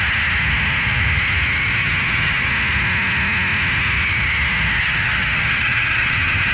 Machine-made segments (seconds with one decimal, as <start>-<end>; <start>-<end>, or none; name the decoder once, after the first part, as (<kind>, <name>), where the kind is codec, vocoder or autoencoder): 1.8-2.5 (vocoder, HiFi-GAN); 4.8-6.5